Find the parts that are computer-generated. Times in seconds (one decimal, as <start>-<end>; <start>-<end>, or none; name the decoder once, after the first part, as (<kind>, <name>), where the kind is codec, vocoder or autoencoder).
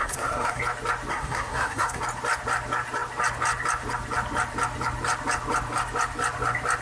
0.0-0.6 (codec, SNAC); 1.1-2.0